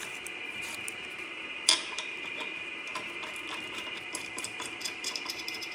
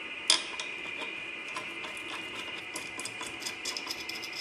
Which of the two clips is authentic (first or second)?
second